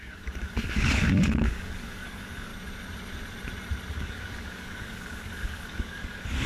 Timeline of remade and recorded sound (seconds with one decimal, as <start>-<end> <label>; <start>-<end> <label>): 0.0-2.5 remade; 2.5-3.9 recorded; 3.9-6.5 remade